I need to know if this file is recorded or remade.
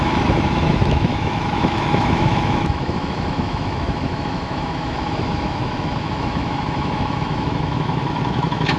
remade